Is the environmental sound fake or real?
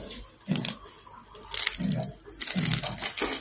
real